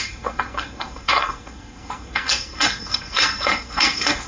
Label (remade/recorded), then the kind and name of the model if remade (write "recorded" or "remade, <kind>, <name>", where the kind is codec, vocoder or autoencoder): remade, codec, SNAC